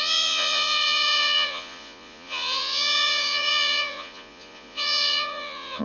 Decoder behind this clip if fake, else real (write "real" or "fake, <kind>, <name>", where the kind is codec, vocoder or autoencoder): fake, vocoder, Vocos